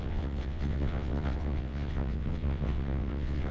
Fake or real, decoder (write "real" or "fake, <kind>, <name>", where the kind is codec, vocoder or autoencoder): fake, vocoder, WaveNeXt